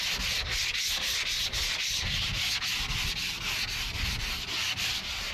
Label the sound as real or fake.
real